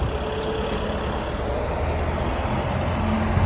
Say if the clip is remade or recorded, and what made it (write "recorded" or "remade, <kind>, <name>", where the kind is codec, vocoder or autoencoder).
recorded